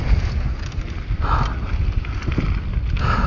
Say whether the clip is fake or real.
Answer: real